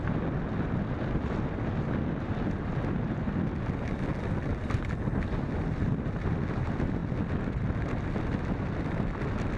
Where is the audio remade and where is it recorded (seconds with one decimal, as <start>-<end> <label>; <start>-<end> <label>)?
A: 0.0-9.6 recorded